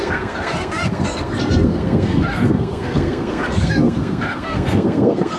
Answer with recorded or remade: remade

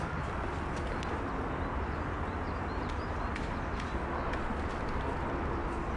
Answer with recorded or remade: recorded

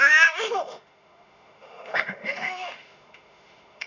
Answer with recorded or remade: remade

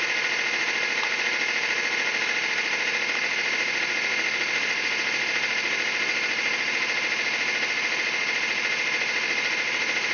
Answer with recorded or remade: recorded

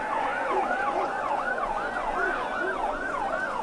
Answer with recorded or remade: remade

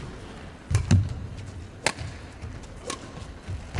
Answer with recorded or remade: recorded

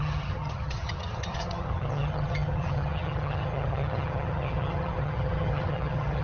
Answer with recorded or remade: remade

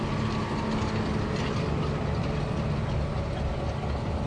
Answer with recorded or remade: recorded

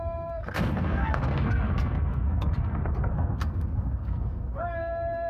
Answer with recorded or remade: remade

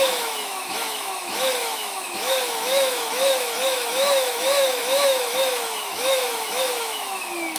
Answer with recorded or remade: remade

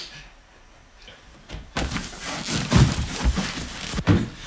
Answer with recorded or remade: recorded